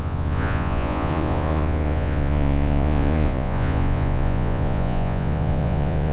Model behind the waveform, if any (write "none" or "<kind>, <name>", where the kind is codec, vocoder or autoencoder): vocoder, Vocos